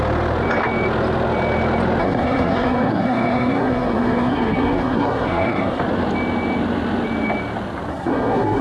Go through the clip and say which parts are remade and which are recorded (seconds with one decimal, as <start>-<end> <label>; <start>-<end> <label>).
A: 0.0-2.0 recorded; 2.0-5.8 remade; 5.8-7.9 recorded; 7.9-8.6 remade